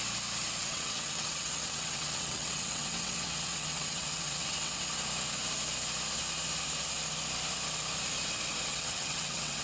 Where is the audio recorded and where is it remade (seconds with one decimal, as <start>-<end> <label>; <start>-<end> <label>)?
0.0-0.6 recorded; 0.6-4.8 remade; 4.8-8.7 recorded; 8.7-9.6 remade

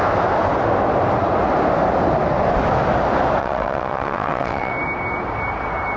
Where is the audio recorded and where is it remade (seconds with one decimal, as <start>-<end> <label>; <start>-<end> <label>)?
0.0-3.4 recorded; 3.4-4.7 remade; 4.7-6.0 recorded

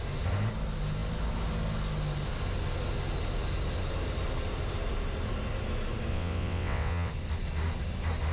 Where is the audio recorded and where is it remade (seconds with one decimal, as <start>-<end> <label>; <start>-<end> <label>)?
0.0-6.1 recorded; 6.1-7.1 remade; 7.1-8.3 recorded

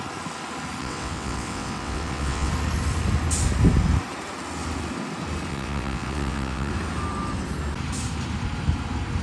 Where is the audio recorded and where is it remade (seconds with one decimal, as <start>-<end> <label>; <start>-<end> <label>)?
0.0-0.8 recorded; 0.8-2.5 remade; 2.5-5.5 recorded; 5.5-6.7 remade; 6.7-9.2 recorded

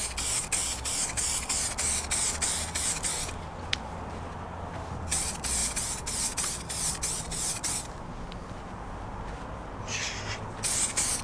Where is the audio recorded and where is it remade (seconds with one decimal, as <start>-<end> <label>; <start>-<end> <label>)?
0.0-11.2 recorded

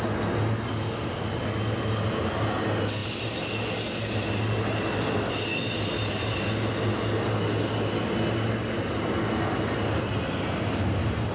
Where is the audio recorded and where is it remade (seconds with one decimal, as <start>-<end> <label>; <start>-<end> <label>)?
0.0-11.3 recorded

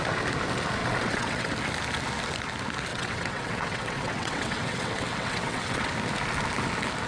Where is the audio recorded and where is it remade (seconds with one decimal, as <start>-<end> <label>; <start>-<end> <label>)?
0.0-0.8 recorded; 0.8-1.5 remade; 1.5-2.9 recorded; 2.9-5.9 remade; 5.9-7.1 recorded